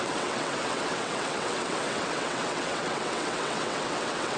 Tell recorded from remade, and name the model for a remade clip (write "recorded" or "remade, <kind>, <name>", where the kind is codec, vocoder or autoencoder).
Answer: remade, vocoder, WaveNeXt